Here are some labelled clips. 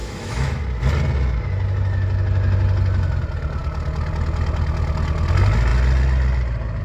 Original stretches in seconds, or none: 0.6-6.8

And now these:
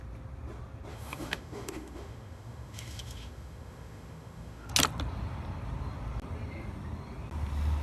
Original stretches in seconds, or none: 0.0-0.9; 4.7-7.8

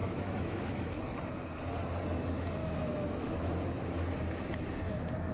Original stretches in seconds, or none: 0.9-2.6; 4.0-5.3

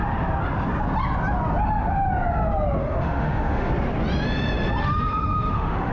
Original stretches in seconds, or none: 0.0-2.8; 3.7-4.8